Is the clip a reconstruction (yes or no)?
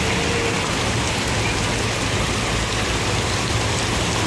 no